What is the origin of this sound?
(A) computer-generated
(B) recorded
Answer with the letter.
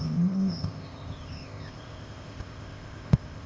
A